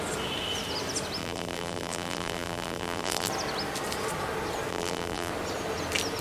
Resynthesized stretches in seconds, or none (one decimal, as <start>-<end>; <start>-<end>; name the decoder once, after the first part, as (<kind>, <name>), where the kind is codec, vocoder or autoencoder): 1.2-3.3 (vocoder, BigVGAN v2); 4.7-5.3

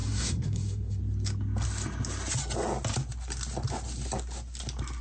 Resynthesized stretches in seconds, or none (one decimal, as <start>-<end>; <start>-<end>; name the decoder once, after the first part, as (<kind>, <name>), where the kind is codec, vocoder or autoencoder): 0.0-1.0 (codec, SNAC)

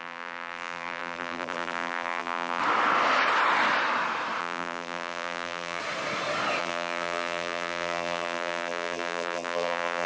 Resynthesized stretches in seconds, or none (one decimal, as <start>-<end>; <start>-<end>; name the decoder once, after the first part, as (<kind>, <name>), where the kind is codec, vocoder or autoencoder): 0.0-2.6 (vocoder, BigVGAN v2); 4.4-5.8; 6.6-10.1

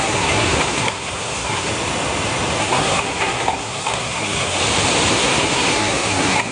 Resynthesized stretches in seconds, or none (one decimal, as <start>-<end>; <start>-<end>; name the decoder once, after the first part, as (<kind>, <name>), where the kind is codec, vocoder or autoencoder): 0.0-1.7 (codec, SNAC); 2.6-4.6; 5.1-6.5

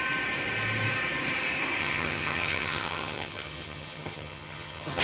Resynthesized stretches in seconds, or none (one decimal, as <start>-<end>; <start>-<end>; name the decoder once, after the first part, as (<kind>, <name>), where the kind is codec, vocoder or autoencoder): 1.8-5.0 (vocoder, HiFi-GAN)